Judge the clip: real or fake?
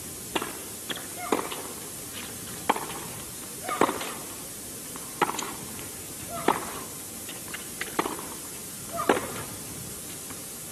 real